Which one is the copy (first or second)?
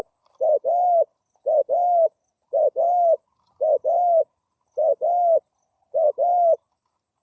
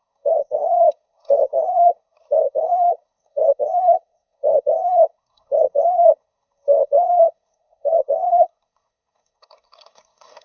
second